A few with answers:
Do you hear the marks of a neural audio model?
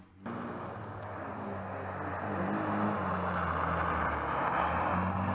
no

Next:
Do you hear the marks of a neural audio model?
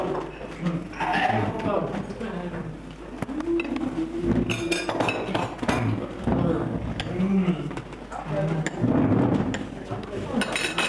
no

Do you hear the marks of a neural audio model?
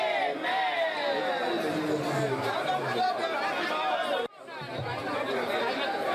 no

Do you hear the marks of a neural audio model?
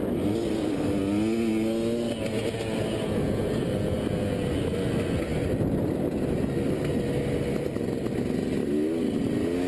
no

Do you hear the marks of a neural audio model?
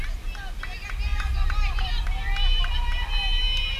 no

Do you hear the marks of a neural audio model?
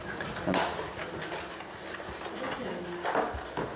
no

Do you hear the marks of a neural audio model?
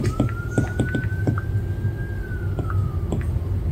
no